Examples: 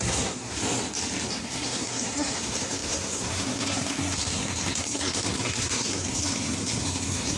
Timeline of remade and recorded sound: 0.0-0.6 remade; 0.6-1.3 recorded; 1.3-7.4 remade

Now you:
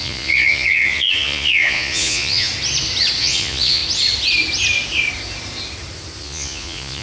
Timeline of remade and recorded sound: 0.0-2.5 remade; 2.5-3.2 recorded; 3.2-3.8 remade; 3.8-6.2 recorded; 6.2-7.0 remade

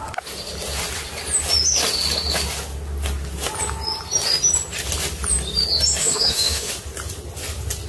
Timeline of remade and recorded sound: 0.0-6.0 recorded; 6.0-6.7 remade; 6.7-7.9 recorded

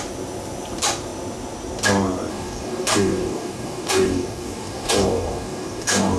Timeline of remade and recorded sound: 0.0-2.3 recorded; 2.3-6.2 remade

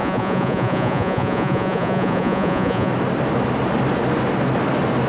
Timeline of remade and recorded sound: 0.0-2.9 remade; 2.9-5.1 recorded

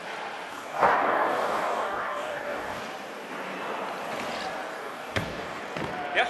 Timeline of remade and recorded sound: 0.0-0.5 recorded; 0.5-2.8 remade; 2.8-4.8 recorded; 4.8-5.6 remade; 5.6-6.3 recorded